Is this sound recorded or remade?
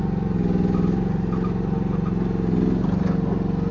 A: recorded